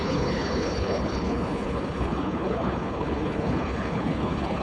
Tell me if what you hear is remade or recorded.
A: remade